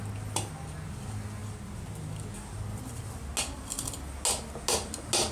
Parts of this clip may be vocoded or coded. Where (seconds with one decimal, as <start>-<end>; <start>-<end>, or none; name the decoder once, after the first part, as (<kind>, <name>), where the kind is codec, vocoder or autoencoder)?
none